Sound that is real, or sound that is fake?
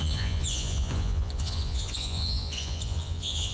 fake